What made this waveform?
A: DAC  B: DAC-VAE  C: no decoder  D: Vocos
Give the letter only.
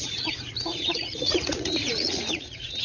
D